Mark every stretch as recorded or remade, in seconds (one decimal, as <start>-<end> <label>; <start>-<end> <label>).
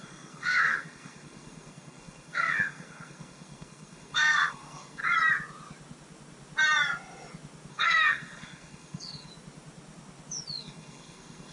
0.0-5.0 remade; 5.0-7.7 recorded; 7.7-9.3 remade; 9.3-10.6 recorded; 10.6-11.5 remade